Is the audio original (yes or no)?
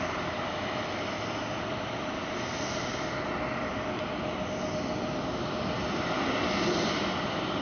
yes